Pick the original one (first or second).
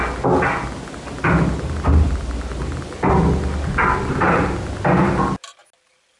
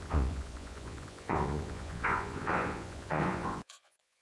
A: first